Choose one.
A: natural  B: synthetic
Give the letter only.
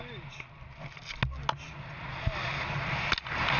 A